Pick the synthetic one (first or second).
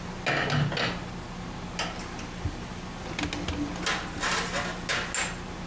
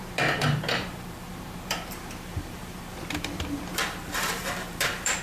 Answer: second